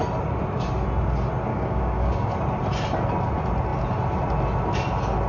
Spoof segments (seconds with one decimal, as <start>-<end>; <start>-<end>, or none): 1.5-2.3